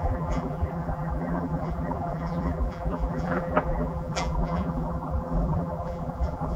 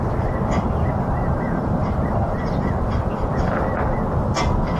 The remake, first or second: first